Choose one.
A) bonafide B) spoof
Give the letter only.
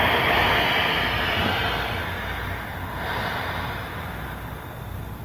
A